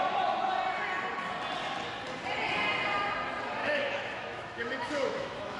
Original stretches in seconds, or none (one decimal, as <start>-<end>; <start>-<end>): 0.0-3.6